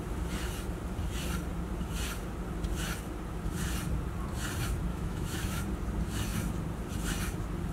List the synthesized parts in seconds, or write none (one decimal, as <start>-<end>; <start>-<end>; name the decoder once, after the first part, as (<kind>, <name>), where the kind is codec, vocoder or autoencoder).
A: 4.9-5.6 (autoencoder, DAC-VAE)